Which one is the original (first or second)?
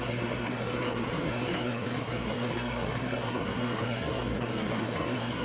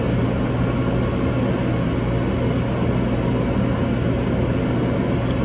second